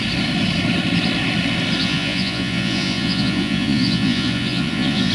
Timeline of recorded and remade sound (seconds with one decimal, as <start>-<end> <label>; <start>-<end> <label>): 0.0-1.8 recorded; 1.8-5.1 remade